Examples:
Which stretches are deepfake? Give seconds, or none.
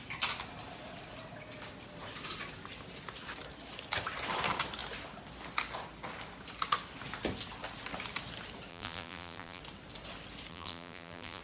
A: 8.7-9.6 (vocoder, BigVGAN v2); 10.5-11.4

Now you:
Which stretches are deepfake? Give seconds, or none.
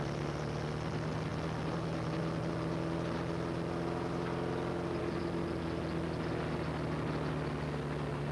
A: none